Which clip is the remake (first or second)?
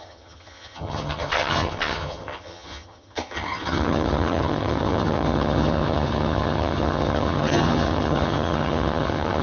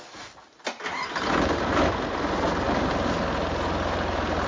first